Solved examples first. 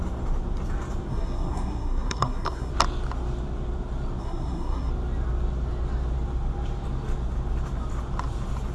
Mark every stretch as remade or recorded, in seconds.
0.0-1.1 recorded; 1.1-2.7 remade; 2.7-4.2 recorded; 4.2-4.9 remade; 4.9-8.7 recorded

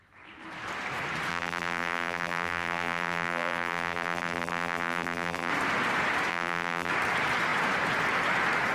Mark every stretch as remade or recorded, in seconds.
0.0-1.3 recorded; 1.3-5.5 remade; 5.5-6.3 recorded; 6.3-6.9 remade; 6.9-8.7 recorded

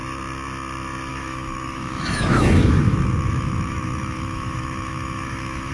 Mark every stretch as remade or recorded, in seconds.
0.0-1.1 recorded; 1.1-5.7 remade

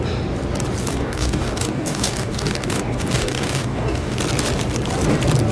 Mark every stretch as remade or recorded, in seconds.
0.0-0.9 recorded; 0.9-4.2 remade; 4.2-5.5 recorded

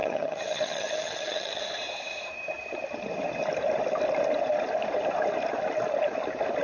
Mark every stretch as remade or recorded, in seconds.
0.0-1.6 remade; 1.6-6.6 recorded

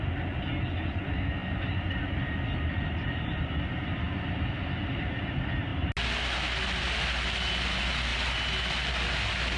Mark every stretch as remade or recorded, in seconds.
0.0-9.6 recorded

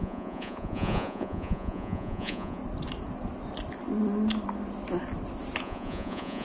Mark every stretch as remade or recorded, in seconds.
0.0-2.6 remade; 2.6-5.6 recorded; 5.6-6.4 remade

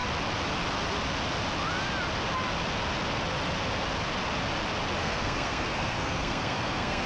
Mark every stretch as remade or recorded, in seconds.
0.0-5.0 recorded; 5.0-7.1 remade